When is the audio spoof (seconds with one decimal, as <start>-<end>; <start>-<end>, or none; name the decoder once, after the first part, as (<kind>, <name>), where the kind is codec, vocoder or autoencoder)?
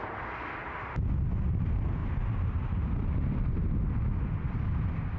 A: none